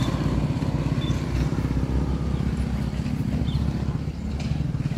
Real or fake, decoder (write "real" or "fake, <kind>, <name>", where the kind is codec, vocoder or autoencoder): real